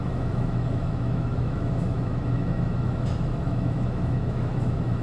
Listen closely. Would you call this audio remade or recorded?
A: remade